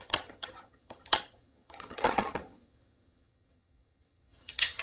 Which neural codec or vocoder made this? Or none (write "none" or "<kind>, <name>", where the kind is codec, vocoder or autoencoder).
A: vocoder, HiFi-GAN